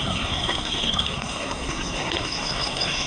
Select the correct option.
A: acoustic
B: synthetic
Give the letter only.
B